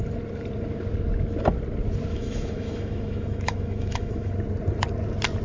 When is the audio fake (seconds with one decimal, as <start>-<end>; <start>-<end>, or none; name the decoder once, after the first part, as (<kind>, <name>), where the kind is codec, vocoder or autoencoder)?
2.1-4.3 (autoencoder, DAC-VAE)